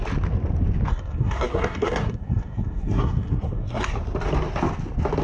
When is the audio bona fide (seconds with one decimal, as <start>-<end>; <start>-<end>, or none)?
0.0-0.9; 3.9-5.2